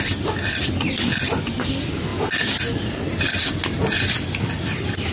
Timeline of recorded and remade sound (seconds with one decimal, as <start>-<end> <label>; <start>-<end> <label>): 0.0-5.1 recorded